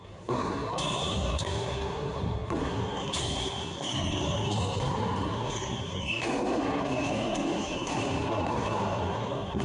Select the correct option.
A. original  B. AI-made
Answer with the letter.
B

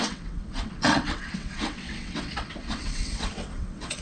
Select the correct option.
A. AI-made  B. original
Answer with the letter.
A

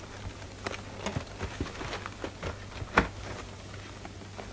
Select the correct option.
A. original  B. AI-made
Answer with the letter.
A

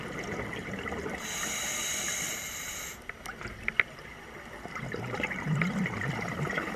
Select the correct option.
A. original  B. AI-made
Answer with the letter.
A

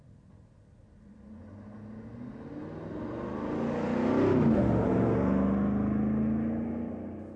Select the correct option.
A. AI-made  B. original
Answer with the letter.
B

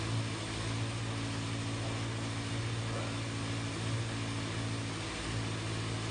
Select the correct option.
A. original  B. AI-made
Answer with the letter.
A